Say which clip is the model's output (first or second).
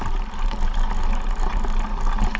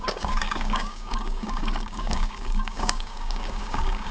second